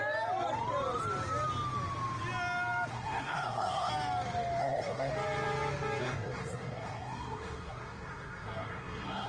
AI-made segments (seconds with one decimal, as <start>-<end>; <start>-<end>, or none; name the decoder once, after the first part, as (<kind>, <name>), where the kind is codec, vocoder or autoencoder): 2.9-3.9 (codec, SNAC); 4.6-5.1; 6.0-9.3